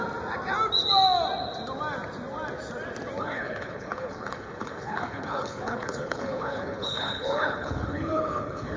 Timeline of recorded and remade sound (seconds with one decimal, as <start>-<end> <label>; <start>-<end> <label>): 0.0-3.2 recorded; 3.2-8.8 remade